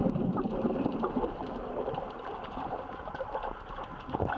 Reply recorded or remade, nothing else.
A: recorded